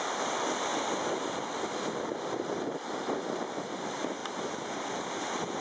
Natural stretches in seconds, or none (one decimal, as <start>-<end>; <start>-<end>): 0.0-5.6